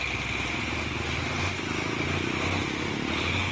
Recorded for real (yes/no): yes